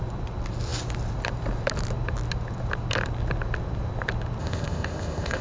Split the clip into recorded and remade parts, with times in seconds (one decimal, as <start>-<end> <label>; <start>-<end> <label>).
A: 0.0-4.4 recorded; 4.4-5.4 remade